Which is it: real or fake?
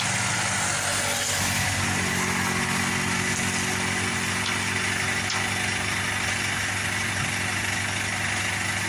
real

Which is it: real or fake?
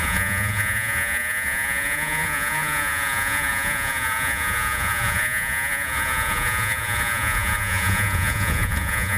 fake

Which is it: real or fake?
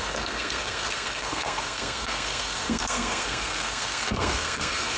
fake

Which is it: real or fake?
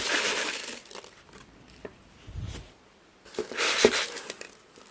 real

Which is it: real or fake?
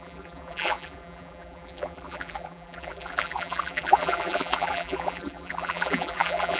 fake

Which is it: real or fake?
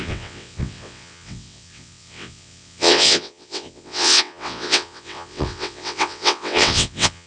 fake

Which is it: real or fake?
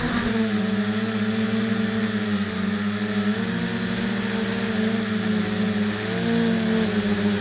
real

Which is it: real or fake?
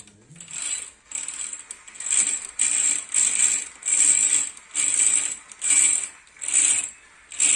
real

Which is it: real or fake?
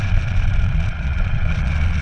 fake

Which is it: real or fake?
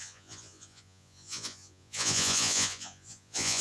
fake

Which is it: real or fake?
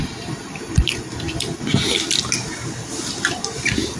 real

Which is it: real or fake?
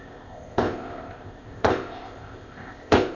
fake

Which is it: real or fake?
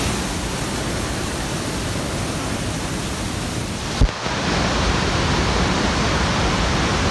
real